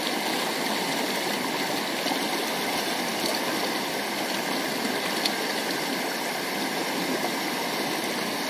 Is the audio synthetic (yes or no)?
no